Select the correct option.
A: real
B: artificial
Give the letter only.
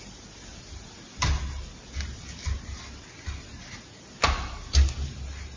A